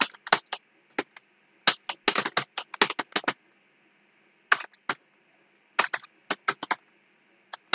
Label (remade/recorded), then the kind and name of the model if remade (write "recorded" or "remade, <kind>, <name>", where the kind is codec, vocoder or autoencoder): recorded